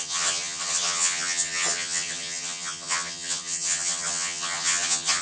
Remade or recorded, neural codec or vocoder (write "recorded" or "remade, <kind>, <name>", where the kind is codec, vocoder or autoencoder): remade, vocoder, HiFi-GAN